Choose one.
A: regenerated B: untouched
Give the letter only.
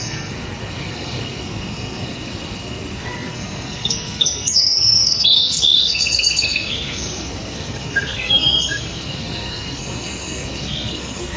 A